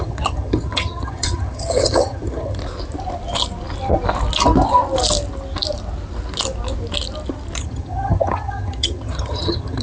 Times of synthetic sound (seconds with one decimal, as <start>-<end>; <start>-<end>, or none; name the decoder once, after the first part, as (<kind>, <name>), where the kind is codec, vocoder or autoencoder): 0.0-2.6 (vocoder, HiFi-GAN); 7.6-9.8